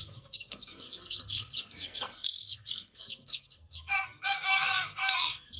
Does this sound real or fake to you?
fake